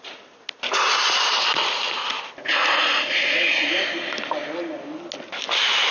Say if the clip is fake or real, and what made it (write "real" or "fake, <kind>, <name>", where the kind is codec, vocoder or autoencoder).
real